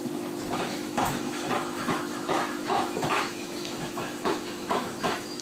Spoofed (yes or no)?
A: yes